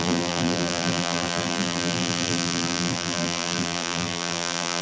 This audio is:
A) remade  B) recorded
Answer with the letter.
A